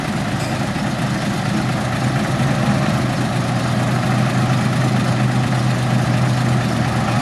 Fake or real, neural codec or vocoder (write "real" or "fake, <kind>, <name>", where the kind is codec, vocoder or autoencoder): real